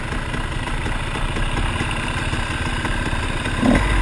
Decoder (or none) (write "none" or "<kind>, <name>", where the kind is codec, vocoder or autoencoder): none